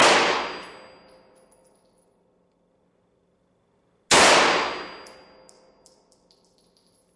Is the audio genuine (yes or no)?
yes